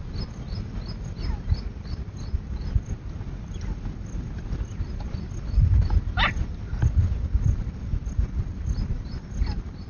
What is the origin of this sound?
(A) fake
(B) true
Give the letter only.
B